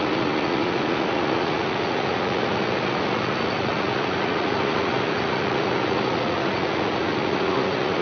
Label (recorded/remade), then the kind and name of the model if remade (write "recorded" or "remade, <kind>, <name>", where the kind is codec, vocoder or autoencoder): remade, vocoder, Vocos